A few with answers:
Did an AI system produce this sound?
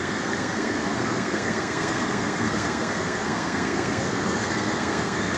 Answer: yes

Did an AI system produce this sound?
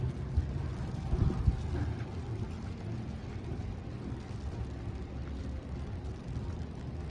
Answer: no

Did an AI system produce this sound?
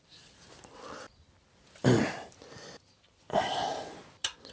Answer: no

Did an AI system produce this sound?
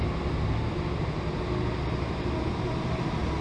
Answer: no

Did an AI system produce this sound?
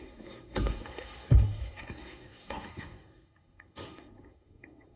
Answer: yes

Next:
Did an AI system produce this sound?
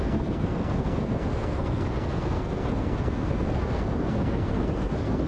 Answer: yes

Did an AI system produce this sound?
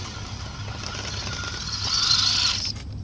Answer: no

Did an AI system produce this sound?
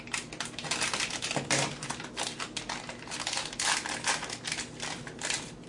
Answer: no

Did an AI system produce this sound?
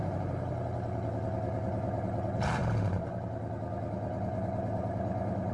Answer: no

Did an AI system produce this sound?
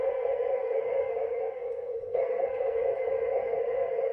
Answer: yes